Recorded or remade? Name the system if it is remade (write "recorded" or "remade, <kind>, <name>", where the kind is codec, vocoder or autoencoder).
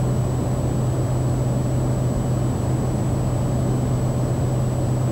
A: recorded